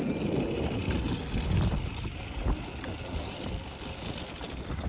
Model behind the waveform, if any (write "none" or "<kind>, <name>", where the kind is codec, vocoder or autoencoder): none